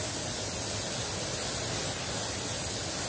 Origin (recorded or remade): recorded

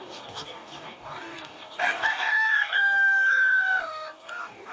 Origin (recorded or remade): remade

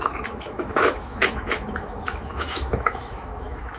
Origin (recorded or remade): remade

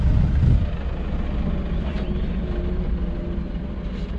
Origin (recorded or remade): recorded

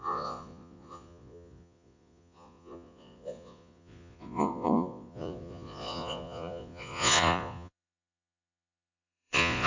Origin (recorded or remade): remade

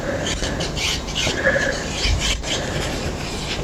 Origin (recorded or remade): remade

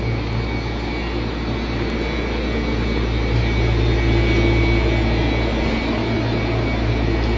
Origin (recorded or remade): recorded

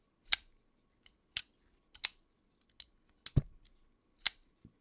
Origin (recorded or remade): recorded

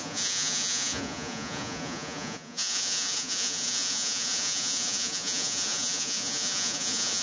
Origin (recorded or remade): remade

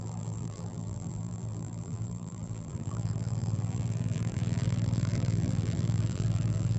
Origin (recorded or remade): remade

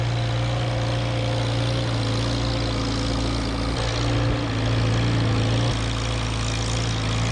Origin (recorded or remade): recorded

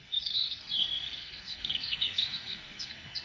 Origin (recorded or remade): remade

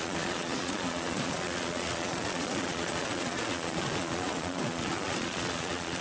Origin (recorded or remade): remade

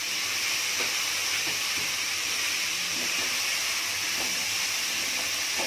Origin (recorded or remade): remade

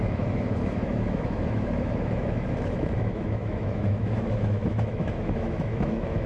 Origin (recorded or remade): remade